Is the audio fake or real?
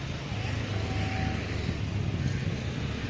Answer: real